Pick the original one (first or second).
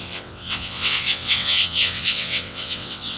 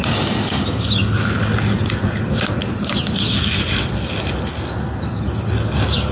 second